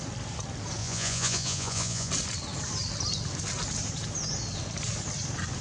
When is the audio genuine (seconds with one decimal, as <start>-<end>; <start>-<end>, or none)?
0.0-0.8; 2.1-5.6